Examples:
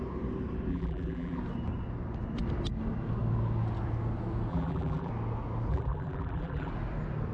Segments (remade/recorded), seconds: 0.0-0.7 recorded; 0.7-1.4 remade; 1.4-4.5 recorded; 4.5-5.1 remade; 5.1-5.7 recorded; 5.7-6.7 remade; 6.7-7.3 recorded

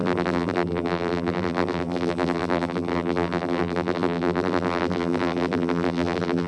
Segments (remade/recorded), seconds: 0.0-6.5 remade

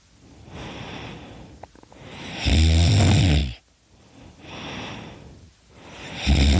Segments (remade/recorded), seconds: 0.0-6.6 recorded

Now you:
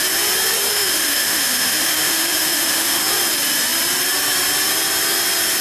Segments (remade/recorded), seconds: 0.0-0.7 recorded; 0.7-3.1 remade; 3.1-5.6 recorded

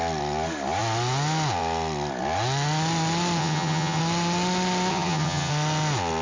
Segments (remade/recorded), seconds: 0.0-3.4 recorded; 3.4-4.0 remade; 4.0-4.9 recorded; 4.9-5.5 remade; 5.5-6.2 recorded

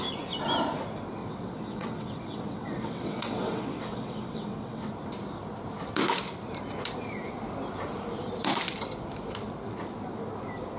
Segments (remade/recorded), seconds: 0.0-1.2 recorded; 1.2-4.9 remade; 4.9-10.8 recorded

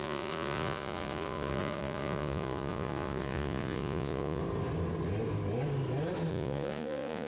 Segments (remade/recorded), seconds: 0.0-4.4 remade; 4.4-6.3 recorded; 6.3-7.3 remade